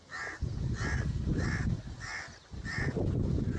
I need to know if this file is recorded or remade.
recorded